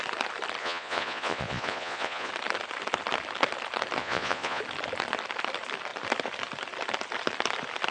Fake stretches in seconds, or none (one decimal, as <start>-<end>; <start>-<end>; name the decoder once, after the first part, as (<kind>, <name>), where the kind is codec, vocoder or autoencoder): 0.6-2.3 (vocoder, Vocos); 4.0-4.6